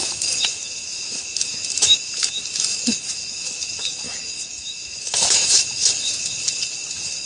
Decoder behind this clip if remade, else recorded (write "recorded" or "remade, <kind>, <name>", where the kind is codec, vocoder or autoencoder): remade, autoencoder, DAC-VAE